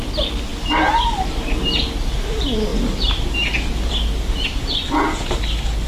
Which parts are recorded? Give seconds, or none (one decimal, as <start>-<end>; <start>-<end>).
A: 0.0-5.9